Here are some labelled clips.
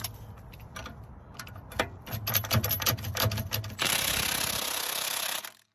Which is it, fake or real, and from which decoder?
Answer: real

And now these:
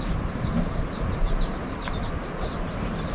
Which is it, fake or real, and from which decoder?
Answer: fake, vocoder, BigVGAN v2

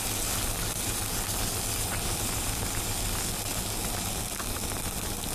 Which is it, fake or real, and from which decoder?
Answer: real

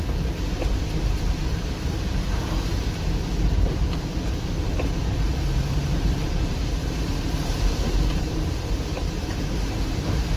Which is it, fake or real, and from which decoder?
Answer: fake, vocoder, BigVGAN v2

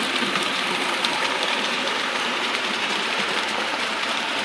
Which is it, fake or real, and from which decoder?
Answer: fake, vocoder, BigVGAN v2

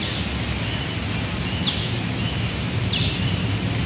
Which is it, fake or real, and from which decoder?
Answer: real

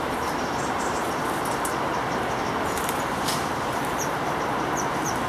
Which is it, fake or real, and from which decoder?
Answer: fake, vocoder, BigVGAN v2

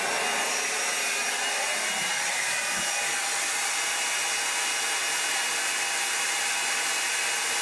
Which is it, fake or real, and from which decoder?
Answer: real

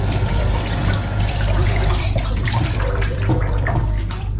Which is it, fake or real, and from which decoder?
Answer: fake, vocoder, BigVGAN v2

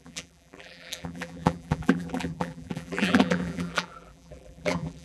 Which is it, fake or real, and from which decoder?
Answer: fake, vocoder, BigVGAN v2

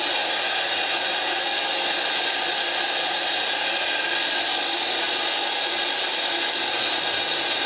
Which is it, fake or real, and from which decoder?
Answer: real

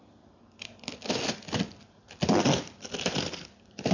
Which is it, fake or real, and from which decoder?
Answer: fake, vocoder, BigVGAN v2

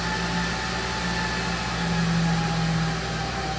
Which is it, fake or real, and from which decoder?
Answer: real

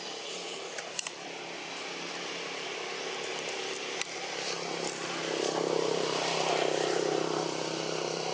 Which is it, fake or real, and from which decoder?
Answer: fake, vocoder, BigVGAN v2